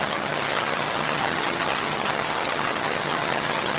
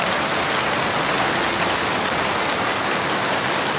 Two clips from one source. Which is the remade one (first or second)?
first